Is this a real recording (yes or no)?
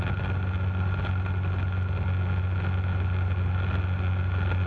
yes